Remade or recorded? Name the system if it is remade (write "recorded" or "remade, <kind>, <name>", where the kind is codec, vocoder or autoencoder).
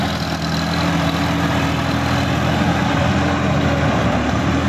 recorded